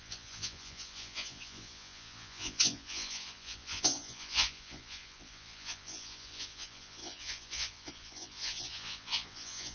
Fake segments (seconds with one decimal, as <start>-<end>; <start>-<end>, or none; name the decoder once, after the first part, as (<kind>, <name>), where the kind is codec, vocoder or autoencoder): 0.0-9.7 (vocoder, Vocos)

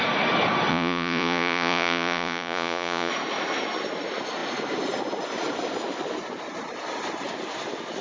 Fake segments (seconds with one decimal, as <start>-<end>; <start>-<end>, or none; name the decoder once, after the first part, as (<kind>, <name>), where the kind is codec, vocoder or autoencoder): 0.7-3.1 (vocoder, Vocos)